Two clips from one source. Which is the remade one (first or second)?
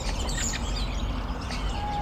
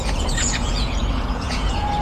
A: second